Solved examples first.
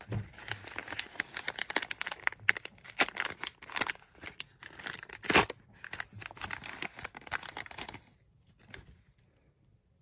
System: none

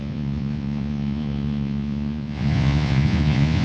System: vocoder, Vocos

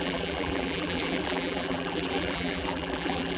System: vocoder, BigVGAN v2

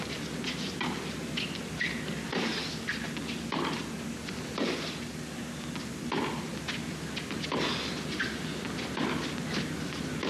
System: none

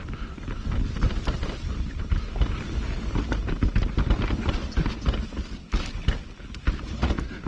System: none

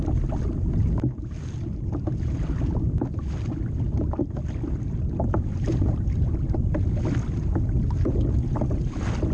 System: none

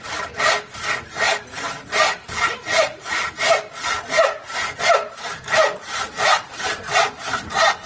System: none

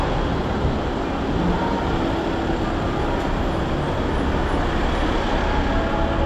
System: none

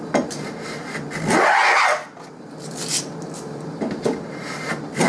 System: none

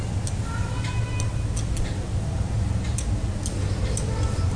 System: none